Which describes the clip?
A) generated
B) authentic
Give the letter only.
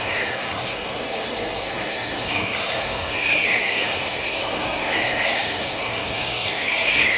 A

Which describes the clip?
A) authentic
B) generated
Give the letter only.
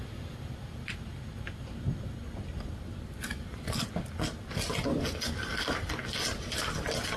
A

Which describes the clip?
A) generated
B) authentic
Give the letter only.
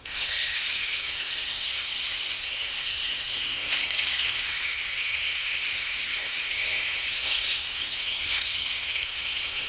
A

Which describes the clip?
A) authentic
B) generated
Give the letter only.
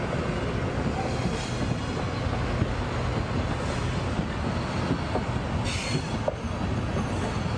A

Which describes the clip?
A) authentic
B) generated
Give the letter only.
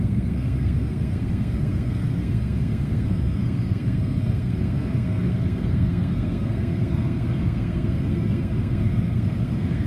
B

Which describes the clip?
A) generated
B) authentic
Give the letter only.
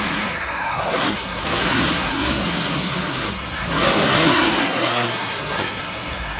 A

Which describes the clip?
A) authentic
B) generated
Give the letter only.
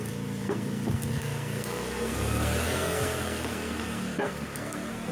B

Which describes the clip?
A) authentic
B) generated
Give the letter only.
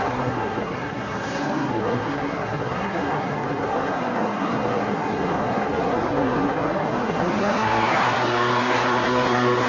B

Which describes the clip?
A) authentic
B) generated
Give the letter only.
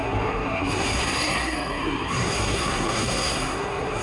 B